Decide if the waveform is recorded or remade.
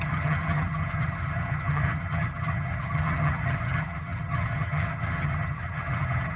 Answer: remade